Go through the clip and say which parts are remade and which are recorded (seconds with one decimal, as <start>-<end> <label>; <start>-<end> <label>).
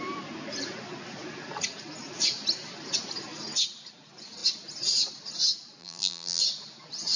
0.0-5.8 recorded; 5.8-6.4 remade; 6.4-7.2 recorded